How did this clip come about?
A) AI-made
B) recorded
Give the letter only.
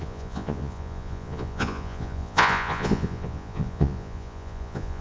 A